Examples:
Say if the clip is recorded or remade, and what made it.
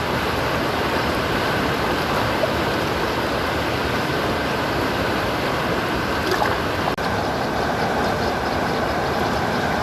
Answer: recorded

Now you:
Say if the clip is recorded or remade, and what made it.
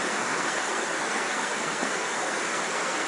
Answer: remade, codec, SNAC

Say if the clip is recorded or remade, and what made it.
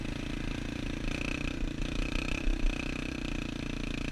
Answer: recorded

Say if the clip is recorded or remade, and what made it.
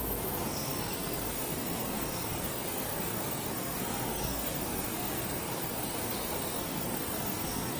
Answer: remade, codec, SNAC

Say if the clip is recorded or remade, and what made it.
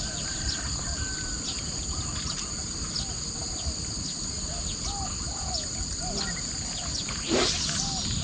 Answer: recorded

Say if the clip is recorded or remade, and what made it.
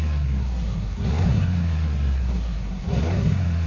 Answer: remade, codec, SNAC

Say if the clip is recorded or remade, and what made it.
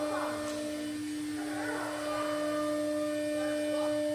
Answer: recorded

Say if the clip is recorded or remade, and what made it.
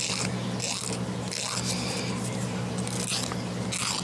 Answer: recorded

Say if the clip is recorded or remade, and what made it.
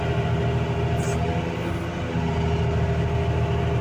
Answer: recorded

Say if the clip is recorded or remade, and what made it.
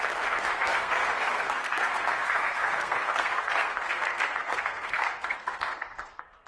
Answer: remade, codec, SNAC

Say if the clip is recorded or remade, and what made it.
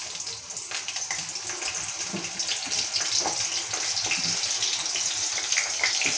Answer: recorded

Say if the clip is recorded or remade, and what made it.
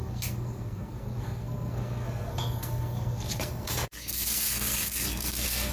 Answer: remade, codec, SNAC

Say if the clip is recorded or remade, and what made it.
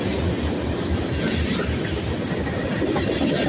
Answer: recorded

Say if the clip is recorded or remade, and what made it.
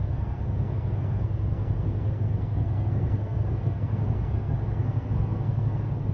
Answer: remade, codec, SNAC